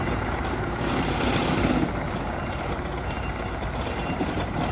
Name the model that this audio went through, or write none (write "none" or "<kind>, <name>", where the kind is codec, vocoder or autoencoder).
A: vocoder, BigVGAN v2